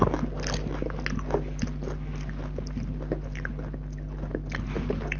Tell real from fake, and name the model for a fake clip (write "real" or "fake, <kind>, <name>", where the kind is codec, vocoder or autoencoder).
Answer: real